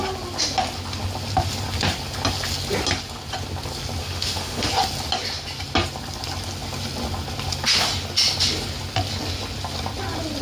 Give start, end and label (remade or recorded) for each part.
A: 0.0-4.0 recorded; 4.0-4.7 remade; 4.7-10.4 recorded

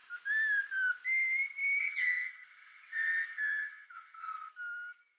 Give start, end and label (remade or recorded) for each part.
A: 0.0-1.8 recorded; 1.8-4.5 remade; 4.5-5.2 recorded

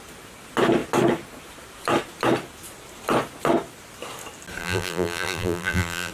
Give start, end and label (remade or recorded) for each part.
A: 0.0-4.6 recorded; 4.6-6.1 remade

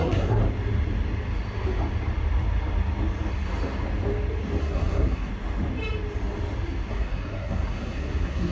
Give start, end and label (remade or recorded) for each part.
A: 0.0-0.4 remade; 0.4-4.6 recorded; 4.6-5.3 remade; 5.3-6.9 recorded; 6.9-8.5 remade

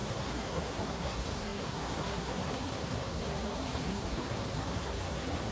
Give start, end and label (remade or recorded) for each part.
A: 0.0-5.5 remade

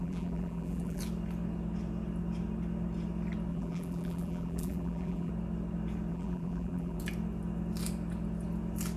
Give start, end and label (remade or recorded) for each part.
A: 0.0-1.0 remade; 1.0-3.5 recorded; 3.5-5.3 remade; 5.3-6.1 recorded; 6.1-7.0 remade; 7.0-9.0 recorded